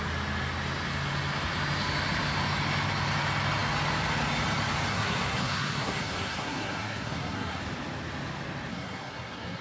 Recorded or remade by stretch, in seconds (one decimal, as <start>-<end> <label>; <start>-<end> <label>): 0.0-4.9 recorded; 4.9-7.6 remade; 7.6-8.7 recorded; 8.7-9.6 remade